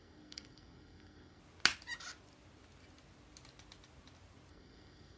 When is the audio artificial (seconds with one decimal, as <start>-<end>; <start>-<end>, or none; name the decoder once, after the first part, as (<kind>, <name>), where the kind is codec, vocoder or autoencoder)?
0.0-1.4 (codec, SNAC); 4.5-5.2